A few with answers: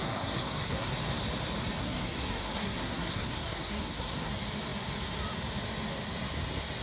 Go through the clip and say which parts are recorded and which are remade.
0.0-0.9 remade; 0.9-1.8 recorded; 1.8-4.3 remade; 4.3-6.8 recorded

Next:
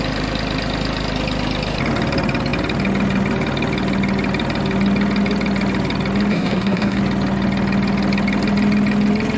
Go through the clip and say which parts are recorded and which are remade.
0.0-6.3 recorded; 6.3-7.0 remade; 7.0-9.4 recorded

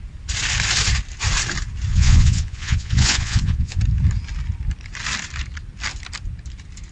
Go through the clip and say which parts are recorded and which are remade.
0.0-1.9 recorded; 1.9-3.8 remade; 3.8-6.9 recorded

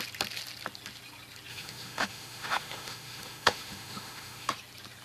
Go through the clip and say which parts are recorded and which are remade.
0.0-1.5 recorded; 1.5-4.5 remade; 4.5-5.0 recorded

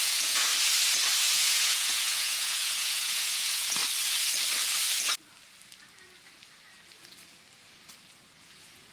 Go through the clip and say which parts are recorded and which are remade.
0.0-0.5 remade; 0.5-1.3 recorded; 1.3-3.8 remade; 3.8-8.4 recorded; 8.4-8.9 remade

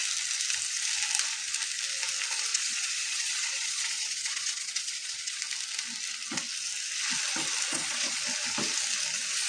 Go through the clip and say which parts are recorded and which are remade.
0.0-2.5 recorded; 2.5-5.4 remade; 5.4-7.7 recorded; 7.7-8.2 remade; 8.2-9.5 recorded